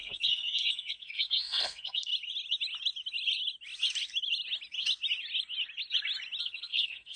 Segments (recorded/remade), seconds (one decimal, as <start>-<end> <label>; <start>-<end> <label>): 0.0-2.1 remade; 2.1-6.4 recorded; 6.4-7.2 remade